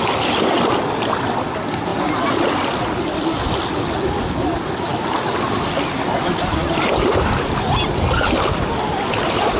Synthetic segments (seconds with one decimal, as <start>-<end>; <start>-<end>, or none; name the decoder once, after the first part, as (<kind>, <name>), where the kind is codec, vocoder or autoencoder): none